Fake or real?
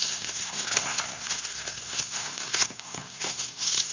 fake